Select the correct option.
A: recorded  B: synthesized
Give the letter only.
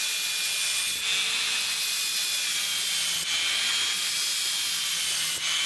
A